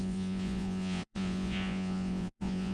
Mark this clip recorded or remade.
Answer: remade